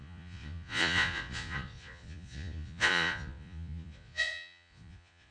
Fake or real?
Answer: fake